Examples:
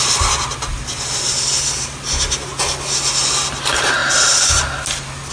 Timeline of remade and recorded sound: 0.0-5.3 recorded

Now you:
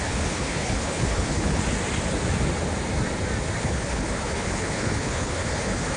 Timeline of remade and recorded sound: 0.0-1.6 remade; 1.6-3.6 recorded; 3.6-6.0 remade

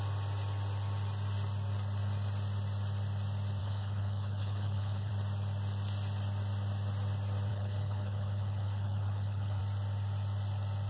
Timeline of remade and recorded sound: 0.0-3.6 recorded; 3.6-5.1 remade; 5.1-7.5 recorded; 7.5-9.6 remade; 9.6-10.9 recorded

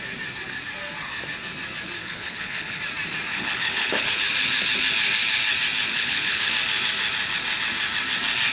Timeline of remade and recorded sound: 0.0-2.0 recorded; 2.0-2.8 remade; 2.8-3.3 recorded; 3.3-4.1 remade; 4.1-5.9 recorded; 5.9-6.5 remade; 6.5-8.5 recorded

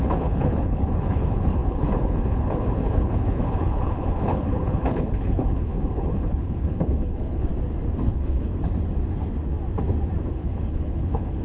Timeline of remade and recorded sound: 0.0-7.5 remade; 7.5-8.1 recorded; 8.1-8.5 remade; 8.5-10.3 recorded; 10.3-11.4 remade